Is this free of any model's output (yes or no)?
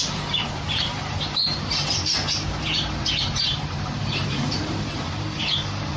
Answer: no